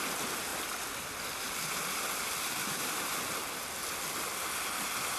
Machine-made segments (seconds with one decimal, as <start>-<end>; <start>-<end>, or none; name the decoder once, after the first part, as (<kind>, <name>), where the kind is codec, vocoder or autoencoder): none